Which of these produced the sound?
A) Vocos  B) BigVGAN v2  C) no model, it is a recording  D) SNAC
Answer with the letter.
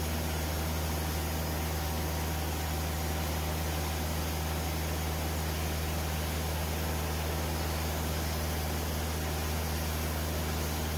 C